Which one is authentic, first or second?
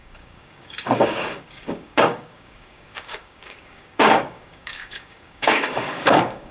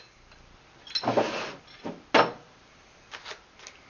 second